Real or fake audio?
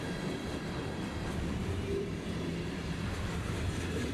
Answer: fake